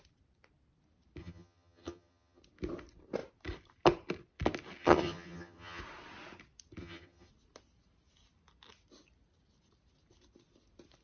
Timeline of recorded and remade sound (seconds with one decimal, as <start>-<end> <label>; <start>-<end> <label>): 0.0-1.2 recorded; 1.2-2.4 remade; 2.4-4.8 recorded; 4.8-5.8 remade; 5.8-6.8 recorded; 6.8-7.3 remade; 7.3-11.0 recorded